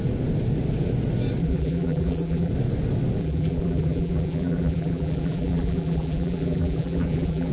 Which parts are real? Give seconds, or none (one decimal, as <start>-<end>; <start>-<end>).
0.0-1.4; 2.5-3.2